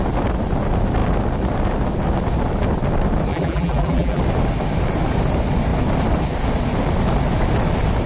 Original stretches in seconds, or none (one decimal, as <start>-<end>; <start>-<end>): 0.0-3.3; 4.2-8.1